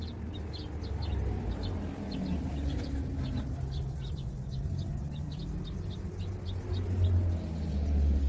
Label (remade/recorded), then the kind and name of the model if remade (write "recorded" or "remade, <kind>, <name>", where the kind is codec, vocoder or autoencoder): recorded